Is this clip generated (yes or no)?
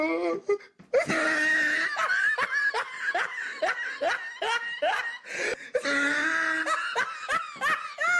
no